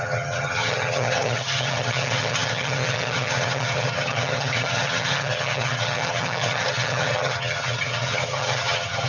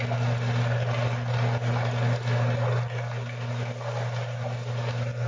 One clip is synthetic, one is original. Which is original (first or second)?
second